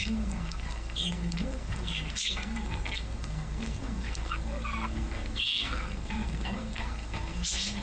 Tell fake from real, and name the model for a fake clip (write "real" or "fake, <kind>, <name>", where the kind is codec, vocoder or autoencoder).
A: fake, codec, SNAC